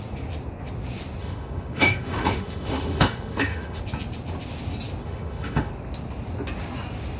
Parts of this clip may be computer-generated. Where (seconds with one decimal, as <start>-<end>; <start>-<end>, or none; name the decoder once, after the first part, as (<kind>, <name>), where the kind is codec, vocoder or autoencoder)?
1.2-3.8 (autoencoder, DAC-VAE); 5.0-5.7